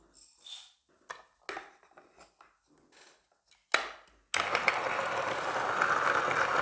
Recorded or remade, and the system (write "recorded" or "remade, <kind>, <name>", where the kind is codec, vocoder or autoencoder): recorded